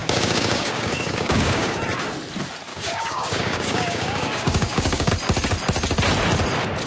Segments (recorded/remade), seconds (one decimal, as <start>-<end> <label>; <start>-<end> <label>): 0.0-1.8 remade; 1.8-2.7 recorded; 2.7-5.1 remade; 5.1-6.9 recorded